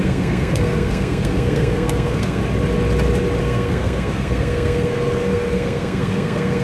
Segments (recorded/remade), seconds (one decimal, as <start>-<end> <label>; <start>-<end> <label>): 0.0-2.4 remade; 2.4-3.4 recorded; 3.4-6.6 remade